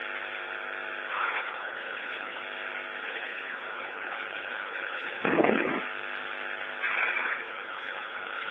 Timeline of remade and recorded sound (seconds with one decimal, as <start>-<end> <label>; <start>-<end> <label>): 0.0-1.1 recorded; 1.1-2.4 remade; 2.4-3.0 recorded; 3.0-5.7 remade; 5.7-7.2 recorded; 7.2-8.5 remade